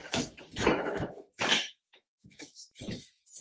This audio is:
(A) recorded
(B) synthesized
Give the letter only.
B